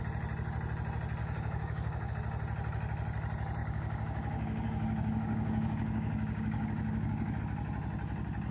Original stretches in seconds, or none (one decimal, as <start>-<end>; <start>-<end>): 0.0-1.2; 2.1-3.6; 7.4-8.5